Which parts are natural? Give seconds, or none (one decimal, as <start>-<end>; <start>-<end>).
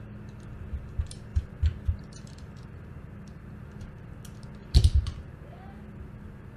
0.0-1.3; 3.9-4.6